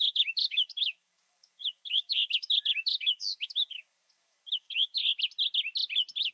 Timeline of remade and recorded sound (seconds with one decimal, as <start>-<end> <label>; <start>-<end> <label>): 0.0-5.0 remade; 5.0-6.3 recorded